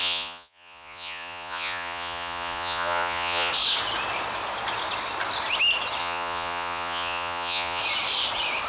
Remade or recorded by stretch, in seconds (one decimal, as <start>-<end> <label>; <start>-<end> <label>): 0.0-3.5 remade; 3.5-6.0 recorded; 6.0-7.8 remade; 7.8-8.7 recorded